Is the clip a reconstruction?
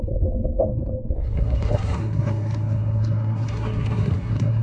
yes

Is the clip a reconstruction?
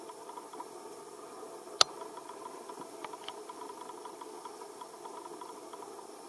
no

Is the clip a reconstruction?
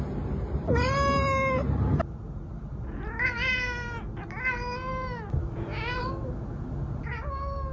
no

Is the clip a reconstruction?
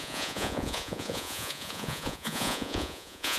yes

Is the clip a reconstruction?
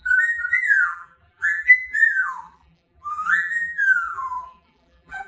yes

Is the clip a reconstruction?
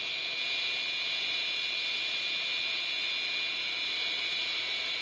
no